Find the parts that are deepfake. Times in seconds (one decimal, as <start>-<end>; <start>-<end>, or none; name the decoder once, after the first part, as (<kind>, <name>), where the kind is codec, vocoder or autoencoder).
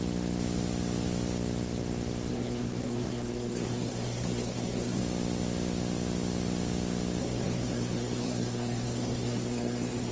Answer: 2.3-5.0 (codec, SNAC); 7.2-10.1